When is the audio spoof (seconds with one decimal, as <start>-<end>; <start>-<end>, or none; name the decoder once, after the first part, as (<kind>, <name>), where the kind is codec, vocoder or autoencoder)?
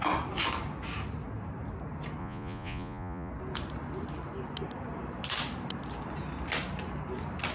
2.2-3.3 (vocoder, Vocos)